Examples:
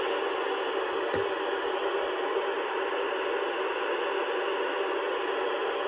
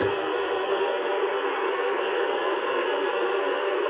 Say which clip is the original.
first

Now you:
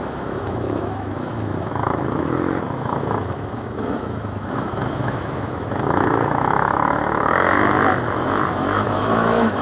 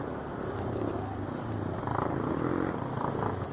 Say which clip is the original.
second